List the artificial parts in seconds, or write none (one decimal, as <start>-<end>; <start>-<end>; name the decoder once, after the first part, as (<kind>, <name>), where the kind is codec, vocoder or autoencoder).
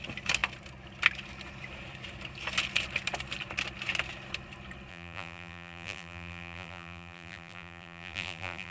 4.9-8.7 (vocoder, BigVGAN v2)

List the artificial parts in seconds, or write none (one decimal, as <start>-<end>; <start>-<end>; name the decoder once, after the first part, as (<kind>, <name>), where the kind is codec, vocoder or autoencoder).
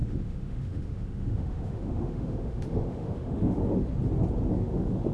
0.0-3.6 (autoencoder, DAC-VAE); 4.5-5.1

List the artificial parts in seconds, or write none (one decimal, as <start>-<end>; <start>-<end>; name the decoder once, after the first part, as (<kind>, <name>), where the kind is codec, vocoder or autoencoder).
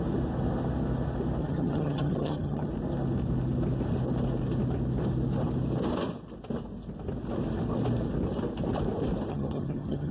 1.4-2.7 (vocoder, HiFi-GAN); 9.3-10.1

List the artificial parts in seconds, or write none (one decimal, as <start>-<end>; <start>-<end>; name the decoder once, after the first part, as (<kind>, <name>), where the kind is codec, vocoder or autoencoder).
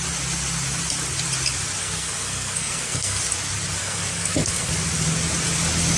1.8-3.2 (codec, SNAC); 3.8-4.7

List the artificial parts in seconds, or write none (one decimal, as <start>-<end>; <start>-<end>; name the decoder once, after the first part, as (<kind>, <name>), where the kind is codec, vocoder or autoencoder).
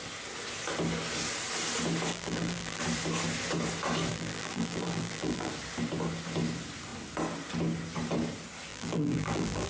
2.1-2.8 (vocoder, BigVGAN v2); 4.1-5.5; 8.7-9.7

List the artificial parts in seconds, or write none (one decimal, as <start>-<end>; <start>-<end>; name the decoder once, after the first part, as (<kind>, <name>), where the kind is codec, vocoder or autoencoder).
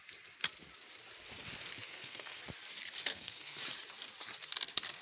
1.9-2.4 (codec, SNAC); 3.1-3.6